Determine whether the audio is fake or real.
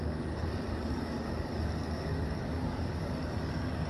fake